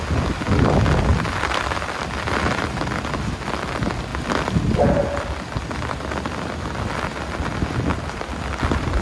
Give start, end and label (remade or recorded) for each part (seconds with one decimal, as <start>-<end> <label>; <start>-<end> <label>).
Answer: 0.0-1.1 recorded; 1.1-3.0 remade; 3.0-9.0 recorded